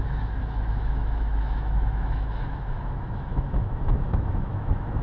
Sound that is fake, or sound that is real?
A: fake